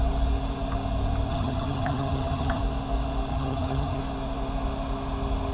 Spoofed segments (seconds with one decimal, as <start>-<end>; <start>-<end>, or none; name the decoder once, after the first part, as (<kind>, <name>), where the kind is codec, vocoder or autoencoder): 1.3-2.6 (vocoder, HiFi-GAN); 3.3-4.0